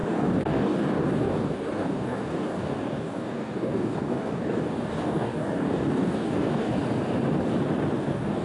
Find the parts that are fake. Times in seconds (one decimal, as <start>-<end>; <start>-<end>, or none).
0.0-6.7; 8.0-8.4